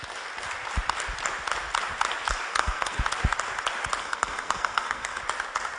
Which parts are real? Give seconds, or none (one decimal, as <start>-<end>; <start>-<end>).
0.0-2.5; 3.0-4.0; 5.2-5.8